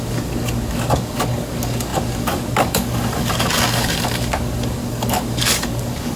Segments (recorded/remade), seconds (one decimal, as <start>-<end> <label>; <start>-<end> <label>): 0.0-6.2 remade